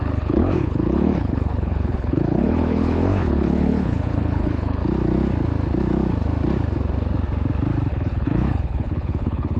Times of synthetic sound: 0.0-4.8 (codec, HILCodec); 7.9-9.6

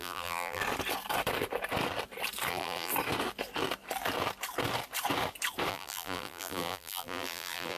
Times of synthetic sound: 0.0-0.6 (vocoder, BigVGAN v2); 2.5-2.9; 5.7-7.8

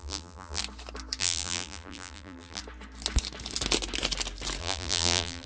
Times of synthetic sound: 0.0-0.6 (vocoder, BigVGAN v2); 1.2-2.6; 4.6-5.5

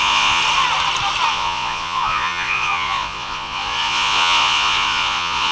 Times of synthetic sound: 0.0-0.4 (vocoder, Vocos); 1.3-5.5

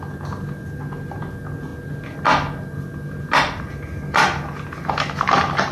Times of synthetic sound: none

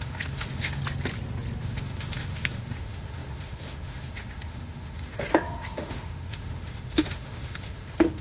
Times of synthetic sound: 0.0-0.8 (autoencoder, DAC-VAE); 1.6-8.2